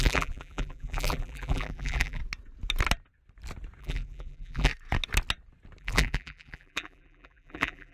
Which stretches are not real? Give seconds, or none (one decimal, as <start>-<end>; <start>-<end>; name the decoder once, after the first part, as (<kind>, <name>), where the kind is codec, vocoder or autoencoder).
0.0-2.2 (vocoder, BigVGAN v2); 3.8-4.7; 5.8-7.9